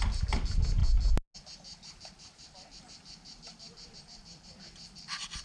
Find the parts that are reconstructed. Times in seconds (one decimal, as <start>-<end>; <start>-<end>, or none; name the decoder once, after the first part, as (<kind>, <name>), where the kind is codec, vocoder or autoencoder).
none